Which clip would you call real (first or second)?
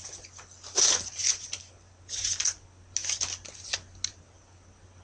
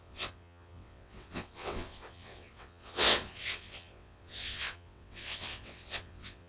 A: first